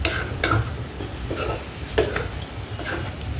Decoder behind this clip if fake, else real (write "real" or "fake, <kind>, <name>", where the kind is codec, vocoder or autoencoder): real